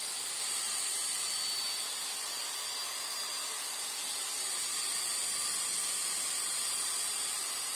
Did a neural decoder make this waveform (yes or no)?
no